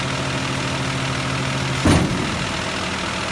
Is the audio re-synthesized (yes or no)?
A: no